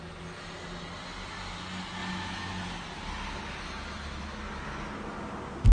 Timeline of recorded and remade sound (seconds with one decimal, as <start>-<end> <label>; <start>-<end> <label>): 0.0-5.7 recorded